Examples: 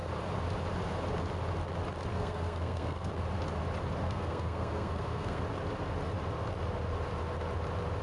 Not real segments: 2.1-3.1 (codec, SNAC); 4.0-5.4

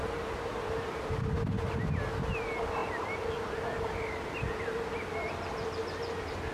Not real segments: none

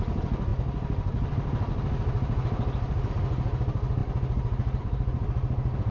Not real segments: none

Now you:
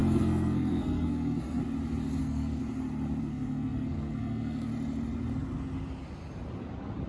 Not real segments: 0.0-1.6 (codec, SNAC); 2.2-2.6; 3.2-4.7

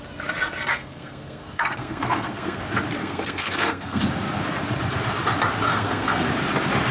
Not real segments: 0.7-2.6 (codec, SNAC); 3.0-4.0; 5.7-6.2

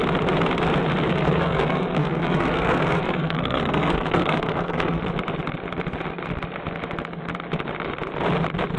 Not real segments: 1.1-5.0 (codec, SNAC)